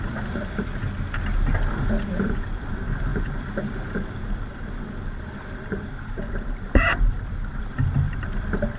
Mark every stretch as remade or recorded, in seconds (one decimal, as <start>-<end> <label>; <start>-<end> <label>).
0.0-0.8 remade; 0.8-2.0 recorded; 2.0-8.8 remade